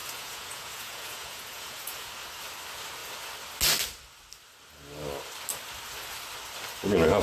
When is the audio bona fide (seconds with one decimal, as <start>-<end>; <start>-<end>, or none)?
2.1-7.2